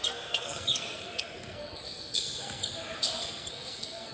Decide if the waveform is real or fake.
fake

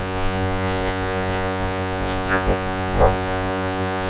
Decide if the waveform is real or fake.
fake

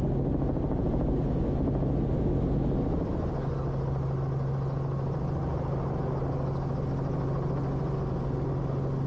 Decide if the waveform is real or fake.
real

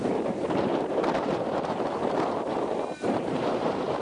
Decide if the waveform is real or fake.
fake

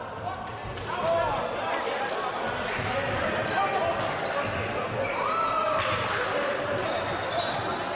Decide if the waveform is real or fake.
real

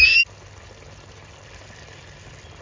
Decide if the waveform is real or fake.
real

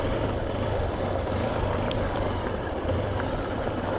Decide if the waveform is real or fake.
real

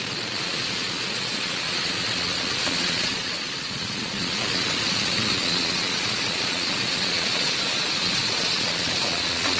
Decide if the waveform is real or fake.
fake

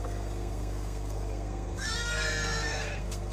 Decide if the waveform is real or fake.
fake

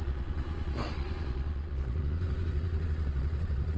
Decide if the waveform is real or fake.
fake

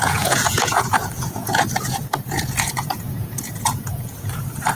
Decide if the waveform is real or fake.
fake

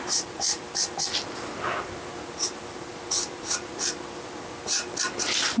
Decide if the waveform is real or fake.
real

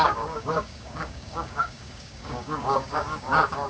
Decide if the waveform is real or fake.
fake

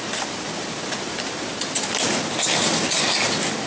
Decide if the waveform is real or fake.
real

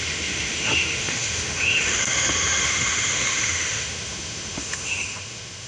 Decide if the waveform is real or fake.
fake